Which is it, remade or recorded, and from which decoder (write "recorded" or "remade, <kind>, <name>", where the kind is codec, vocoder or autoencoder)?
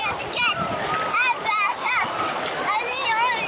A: recorded